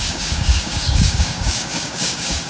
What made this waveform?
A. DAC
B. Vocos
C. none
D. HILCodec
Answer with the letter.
A